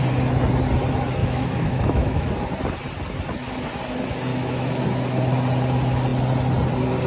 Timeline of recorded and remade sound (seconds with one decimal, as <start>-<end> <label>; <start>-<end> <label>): 0.0-1.2 recorded; 1.2-2.3 remade; 2.3-4.3 recorded; 4.3-4.8 remade; 4.8-7.1 recorded